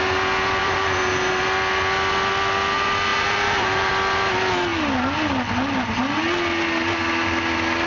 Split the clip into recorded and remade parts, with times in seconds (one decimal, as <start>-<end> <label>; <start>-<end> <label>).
0.0-0.6 recorded; 0.6-1.4 remade; 1.4-3.1 recorded; 3.1-3.9 remade; 3.9-7.9 recorded